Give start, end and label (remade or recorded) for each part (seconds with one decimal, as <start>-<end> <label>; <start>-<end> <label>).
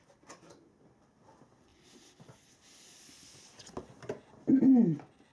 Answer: 0.0-5.3 recorded